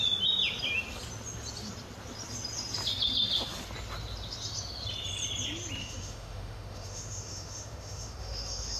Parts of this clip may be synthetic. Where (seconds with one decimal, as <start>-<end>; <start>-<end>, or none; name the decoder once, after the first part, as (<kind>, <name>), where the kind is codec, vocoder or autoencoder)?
5.8-8.8 (autoencoder, DAC-VAE)